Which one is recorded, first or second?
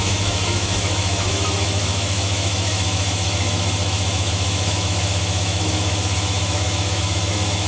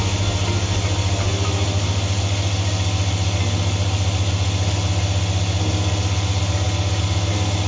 second